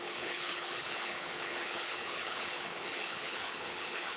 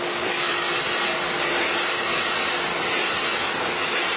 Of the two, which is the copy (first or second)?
first